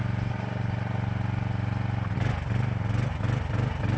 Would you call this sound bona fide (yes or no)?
yes